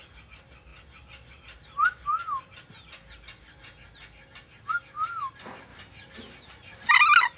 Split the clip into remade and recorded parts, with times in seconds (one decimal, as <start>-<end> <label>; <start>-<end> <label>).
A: 0.0-5.7 recorded; 5.7-6.9 remade; 6.9-7.4 recorded